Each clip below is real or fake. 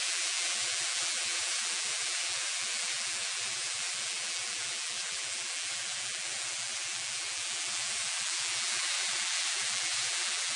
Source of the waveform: fake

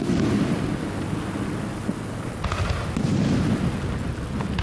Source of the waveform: real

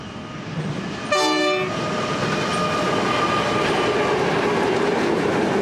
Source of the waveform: real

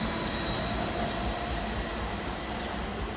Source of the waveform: real